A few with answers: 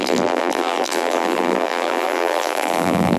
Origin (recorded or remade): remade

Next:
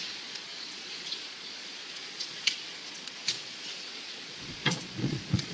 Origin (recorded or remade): remade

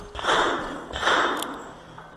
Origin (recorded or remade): recorded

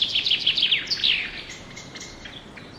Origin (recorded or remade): recorded